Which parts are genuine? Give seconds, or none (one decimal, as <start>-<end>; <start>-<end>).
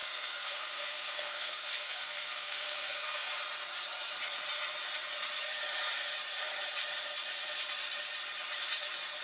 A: 3.3-9.2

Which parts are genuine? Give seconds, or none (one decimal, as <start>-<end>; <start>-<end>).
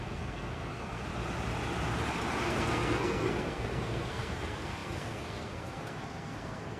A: 1.1-2.4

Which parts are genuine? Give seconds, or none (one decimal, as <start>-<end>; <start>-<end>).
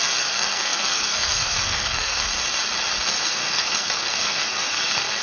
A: 2.3-3.2